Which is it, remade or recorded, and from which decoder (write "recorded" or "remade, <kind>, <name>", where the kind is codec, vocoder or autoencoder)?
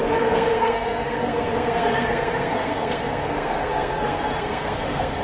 remade, codec, SNAC